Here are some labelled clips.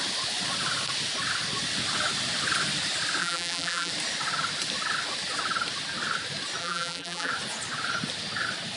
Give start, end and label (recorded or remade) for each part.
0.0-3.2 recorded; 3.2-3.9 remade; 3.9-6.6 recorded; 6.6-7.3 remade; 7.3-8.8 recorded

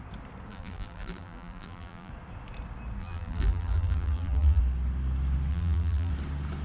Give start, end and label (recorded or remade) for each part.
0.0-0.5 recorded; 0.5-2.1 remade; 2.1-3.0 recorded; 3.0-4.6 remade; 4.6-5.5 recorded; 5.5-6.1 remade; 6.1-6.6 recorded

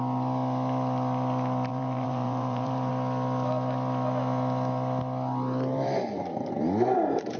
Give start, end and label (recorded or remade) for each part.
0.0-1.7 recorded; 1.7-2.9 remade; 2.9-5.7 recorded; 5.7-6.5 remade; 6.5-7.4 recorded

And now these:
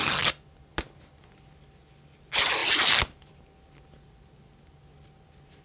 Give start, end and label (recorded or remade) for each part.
0.0-2.6 recorded; 2.6-3.4 remade; 3.4-5.6 recorded

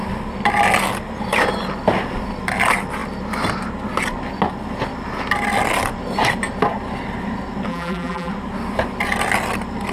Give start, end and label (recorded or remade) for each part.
0.0-7.7 recorded; 7.7-8.3 remade; 8.3-9.9 recorded